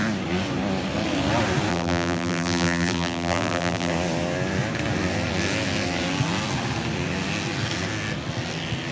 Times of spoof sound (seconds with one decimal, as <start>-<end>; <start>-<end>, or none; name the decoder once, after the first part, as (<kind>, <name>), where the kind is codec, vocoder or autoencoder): 1.7-3.9 (vocoder, BigVGAN v2)